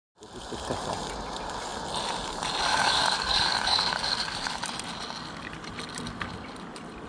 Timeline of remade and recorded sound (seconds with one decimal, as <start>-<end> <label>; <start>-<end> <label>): 0.0-2.7 recorded; 2.7-4.6 remade; 4.6-7.1 recorded